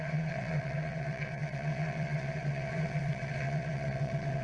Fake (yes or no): yes